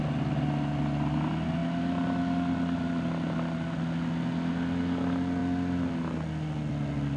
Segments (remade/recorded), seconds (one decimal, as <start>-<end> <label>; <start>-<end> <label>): 0.0-7.2 recorded